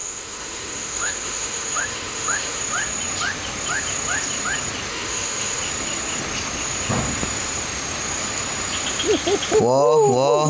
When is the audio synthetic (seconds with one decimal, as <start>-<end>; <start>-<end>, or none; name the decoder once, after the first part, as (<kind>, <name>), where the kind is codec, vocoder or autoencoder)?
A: 0.0-2.6 (autoencoder, DAC-VAE); 4.9-5.6